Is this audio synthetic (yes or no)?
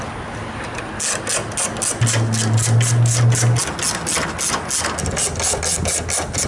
no